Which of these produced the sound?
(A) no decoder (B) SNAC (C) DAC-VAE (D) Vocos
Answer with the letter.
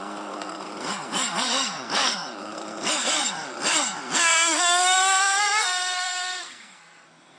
B